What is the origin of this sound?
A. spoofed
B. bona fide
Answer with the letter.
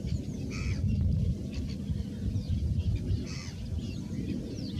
B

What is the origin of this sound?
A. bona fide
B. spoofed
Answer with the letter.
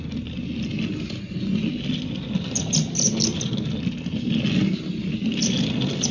A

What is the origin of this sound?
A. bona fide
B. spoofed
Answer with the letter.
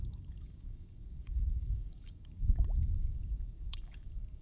B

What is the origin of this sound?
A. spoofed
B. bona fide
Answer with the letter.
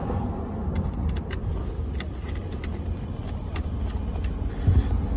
B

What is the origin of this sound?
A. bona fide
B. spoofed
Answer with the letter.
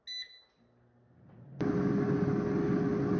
A